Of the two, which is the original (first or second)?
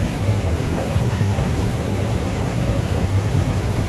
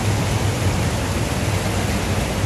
second